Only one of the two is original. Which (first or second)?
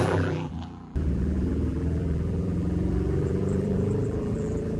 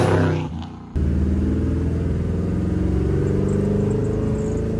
second